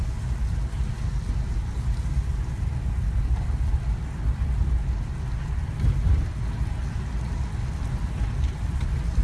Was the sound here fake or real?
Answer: real